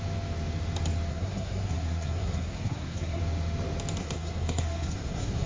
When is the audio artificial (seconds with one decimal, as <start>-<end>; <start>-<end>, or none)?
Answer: 1.1-3.2; 4.0-5.5